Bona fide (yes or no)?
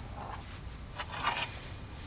yes